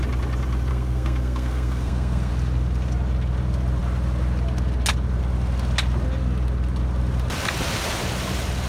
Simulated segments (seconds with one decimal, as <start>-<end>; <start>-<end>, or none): 0.7-2.3